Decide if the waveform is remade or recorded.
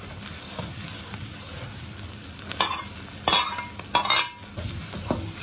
recorded